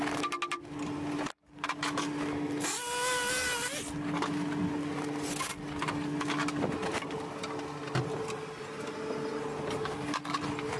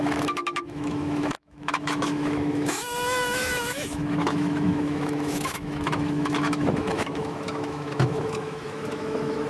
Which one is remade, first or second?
second